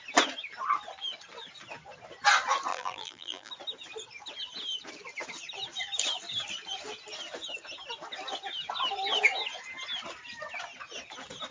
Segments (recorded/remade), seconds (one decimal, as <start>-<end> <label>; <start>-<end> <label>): 0.0-2.7 recorded; 2.7-3.5 remade; 3.5-11.5 recorded